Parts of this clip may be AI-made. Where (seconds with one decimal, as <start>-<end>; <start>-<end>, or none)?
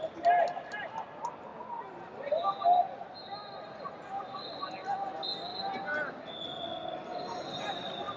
none